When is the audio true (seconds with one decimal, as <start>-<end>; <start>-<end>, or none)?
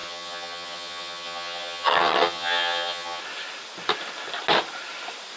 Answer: 3.2-5.4